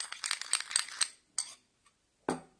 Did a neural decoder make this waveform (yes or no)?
no